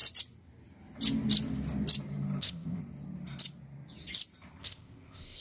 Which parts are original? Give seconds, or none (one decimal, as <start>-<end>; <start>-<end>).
0.0-2.4; 2.8-4.6